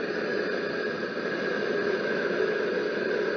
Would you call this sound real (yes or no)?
yes